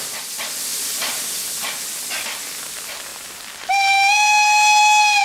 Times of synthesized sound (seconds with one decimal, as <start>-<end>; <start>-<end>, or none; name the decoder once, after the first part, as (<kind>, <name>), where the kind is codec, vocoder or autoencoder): none